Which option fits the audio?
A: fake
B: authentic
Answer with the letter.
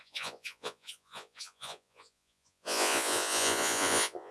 A